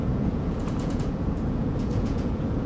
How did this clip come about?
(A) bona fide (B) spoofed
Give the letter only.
B